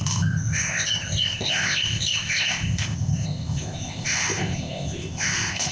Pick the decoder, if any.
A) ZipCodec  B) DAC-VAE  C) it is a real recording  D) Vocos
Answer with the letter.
A